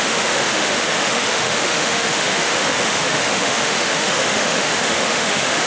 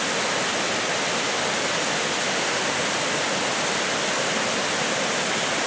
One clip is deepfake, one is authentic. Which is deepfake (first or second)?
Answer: first